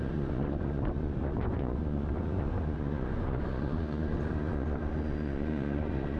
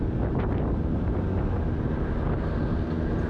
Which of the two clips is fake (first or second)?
first